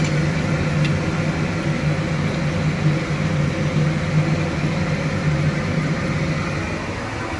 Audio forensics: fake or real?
real